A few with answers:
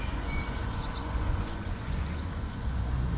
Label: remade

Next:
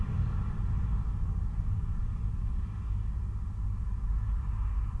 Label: recorded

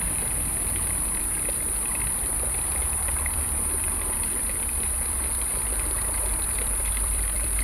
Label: remade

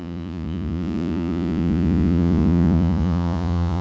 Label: remade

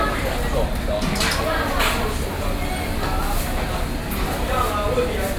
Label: recorded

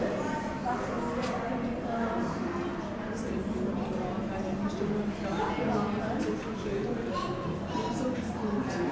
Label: recorded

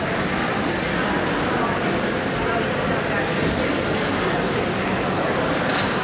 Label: recorded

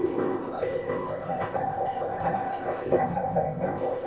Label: remade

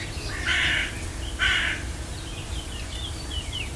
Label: recorded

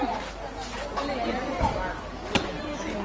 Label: recorded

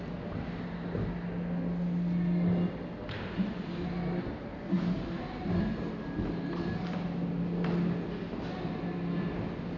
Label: recorded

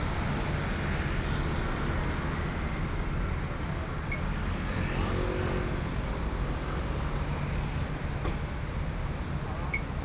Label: recorded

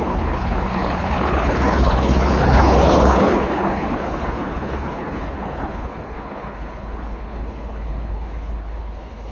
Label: remade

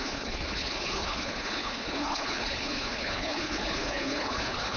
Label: remade